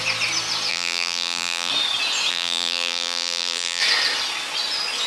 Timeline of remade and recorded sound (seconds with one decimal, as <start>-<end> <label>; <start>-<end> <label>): 0.0-0.7 recorded; 0.7-1.7 remade; 1.7-2.3 recorded; 2.3-3.8 remade; 3.8-5.1 recorded